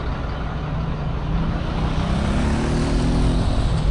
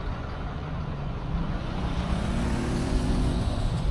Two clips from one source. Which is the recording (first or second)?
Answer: first